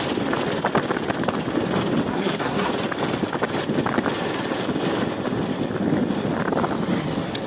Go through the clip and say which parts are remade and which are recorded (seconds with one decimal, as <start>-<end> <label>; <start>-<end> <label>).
0.0-2.1 recorded; 2.1-2.7 remade; 2.7-7.5 recorded